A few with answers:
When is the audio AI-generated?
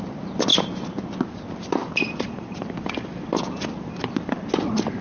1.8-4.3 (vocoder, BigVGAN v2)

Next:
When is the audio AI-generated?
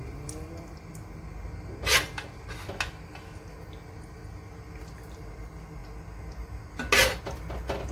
none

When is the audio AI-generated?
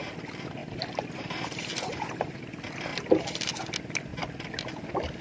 0.6-2.4 (vocoder, BigVGAN v2)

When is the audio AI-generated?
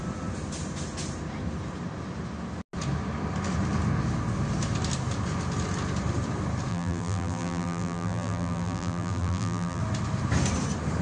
6.7-9.8 (vocoder, BigVGAN v2)